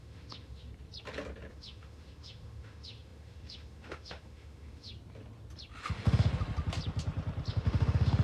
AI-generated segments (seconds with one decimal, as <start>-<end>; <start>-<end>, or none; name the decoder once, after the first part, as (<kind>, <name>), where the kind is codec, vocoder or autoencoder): 0.0-0.7 (autoencoder, DAC-VAE); 1.5-4.9; 5.8-6.3; 7.5-8.2